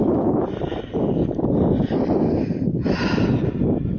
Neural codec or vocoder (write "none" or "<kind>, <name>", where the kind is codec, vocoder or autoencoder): none